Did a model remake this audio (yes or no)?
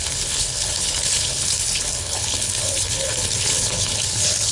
yes